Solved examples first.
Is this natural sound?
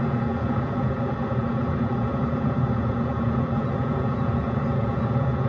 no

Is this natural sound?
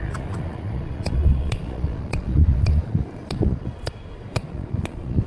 no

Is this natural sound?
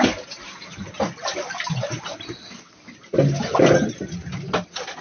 yes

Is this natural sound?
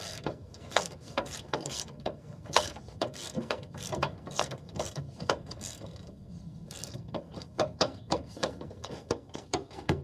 no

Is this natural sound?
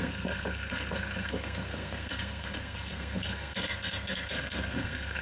no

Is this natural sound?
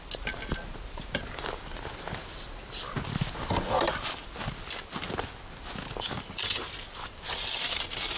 yes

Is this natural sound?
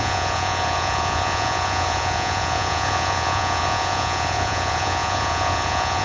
no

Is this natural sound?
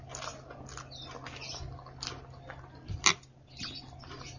yes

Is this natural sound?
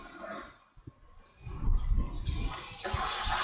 yes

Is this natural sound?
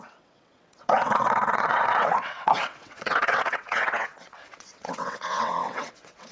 no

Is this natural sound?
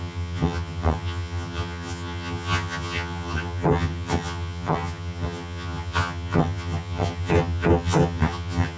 no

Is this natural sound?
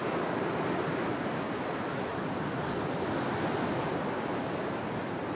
yes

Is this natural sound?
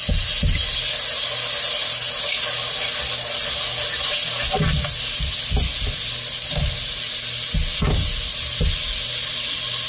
yes